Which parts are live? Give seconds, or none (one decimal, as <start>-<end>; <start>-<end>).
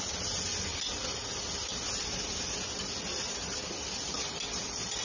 0.0-5.0